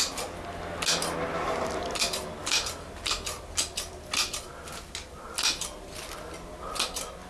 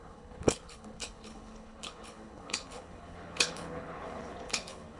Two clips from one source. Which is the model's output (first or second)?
second